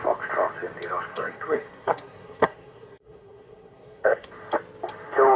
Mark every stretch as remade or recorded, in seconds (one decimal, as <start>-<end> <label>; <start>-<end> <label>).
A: 0.0-1.1 recorded; 1.1-4.3 remade; 4.3-5.4 recorded